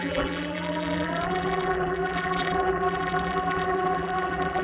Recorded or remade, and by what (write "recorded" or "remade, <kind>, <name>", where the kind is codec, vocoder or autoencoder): remade, vocoder, BigVGAN v2